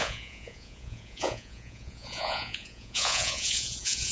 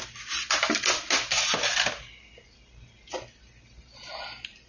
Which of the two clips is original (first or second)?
second